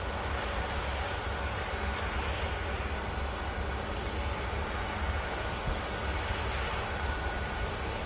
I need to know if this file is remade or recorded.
recorded